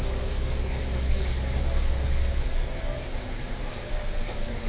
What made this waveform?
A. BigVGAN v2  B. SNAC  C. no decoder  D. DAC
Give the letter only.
D